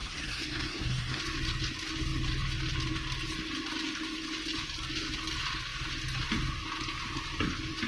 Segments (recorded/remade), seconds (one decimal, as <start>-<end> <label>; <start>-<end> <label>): 0.0-1.2 remade; 1.2-7.9 recorded